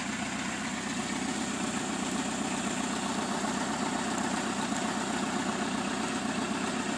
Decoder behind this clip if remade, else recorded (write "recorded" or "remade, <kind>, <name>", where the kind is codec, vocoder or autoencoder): recorded